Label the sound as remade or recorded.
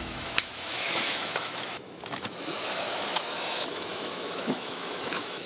remade